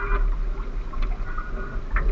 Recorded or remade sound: recorded